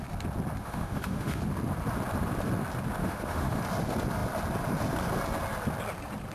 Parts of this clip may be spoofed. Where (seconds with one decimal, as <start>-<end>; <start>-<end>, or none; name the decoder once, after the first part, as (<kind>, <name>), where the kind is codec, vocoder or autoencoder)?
0.6-1.4 (autoencoder, DAC-VAE); 3.0-3.6